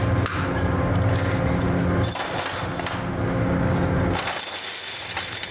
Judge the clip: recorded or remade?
recorded